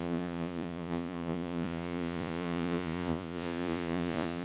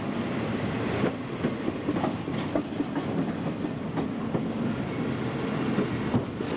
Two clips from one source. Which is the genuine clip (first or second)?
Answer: second